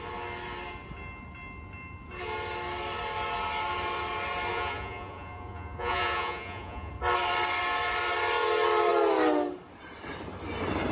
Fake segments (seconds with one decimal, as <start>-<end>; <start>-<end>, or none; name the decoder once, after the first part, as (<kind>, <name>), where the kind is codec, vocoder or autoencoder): 4.5-6.9 (vocoder, Vocos)